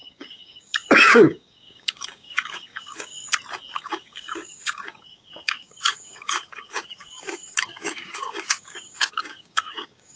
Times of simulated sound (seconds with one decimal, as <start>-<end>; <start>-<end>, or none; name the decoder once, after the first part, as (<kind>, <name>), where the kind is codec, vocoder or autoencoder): 0.0-3.1 (codec, DAC); 3.8-10.2

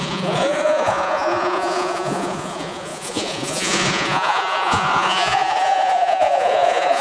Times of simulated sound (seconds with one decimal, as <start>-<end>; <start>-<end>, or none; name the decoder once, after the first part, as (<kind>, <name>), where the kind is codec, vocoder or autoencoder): 0.0-7.0 (vocoder, Vocos)

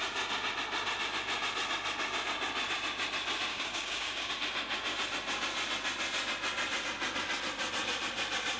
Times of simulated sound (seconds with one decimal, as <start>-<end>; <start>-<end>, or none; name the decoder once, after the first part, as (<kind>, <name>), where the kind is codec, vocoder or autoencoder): 3.5-4.3 (codec, DAC)

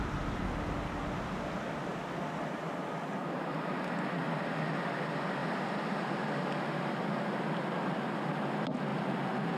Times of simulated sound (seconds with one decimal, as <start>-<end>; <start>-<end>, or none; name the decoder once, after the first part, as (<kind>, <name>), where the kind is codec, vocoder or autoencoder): none